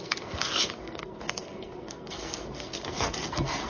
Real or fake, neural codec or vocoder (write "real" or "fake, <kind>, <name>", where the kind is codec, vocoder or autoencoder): fake, codec, SNAC